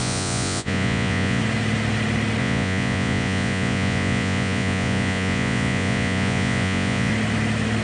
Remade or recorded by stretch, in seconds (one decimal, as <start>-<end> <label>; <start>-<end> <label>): 0.0-1.4 remade; 1.4-2.4 recorded; 2.4-7.1 remade; 7.1-7.8 recorded